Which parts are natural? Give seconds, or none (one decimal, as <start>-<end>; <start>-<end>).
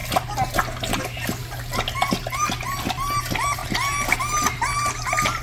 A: 0.0-5.4